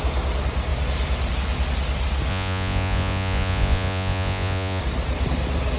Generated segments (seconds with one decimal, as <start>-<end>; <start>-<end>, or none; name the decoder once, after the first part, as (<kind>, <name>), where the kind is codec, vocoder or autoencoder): 2.3-4.8 (vocoder, Vocos)